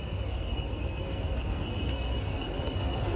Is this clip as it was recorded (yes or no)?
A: no